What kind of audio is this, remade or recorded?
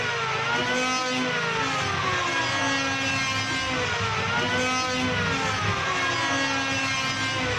recorded